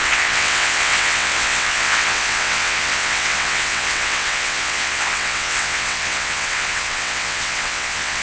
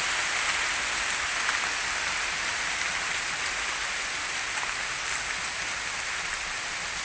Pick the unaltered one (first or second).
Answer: second